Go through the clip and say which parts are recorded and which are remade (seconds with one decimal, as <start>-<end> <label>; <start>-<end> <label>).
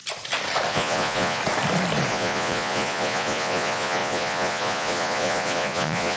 0.0-0.7 recorded; 0.7-1.4 remade; 1.4-2.1 recorded; 2.1-6.2 remade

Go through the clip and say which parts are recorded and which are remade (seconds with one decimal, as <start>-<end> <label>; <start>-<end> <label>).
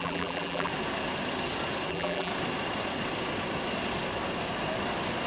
0.0-0.7 remade; 0.7-1.9 recorded; 1.9-2.3 remade; 2.3-5.3 recorded